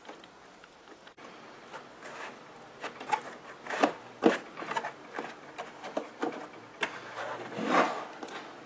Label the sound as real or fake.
real